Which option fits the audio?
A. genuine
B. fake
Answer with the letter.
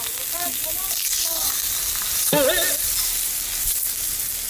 A